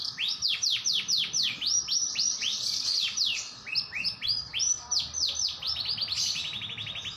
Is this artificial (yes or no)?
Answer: no